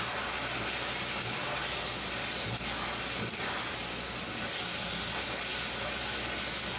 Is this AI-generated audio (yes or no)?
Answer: no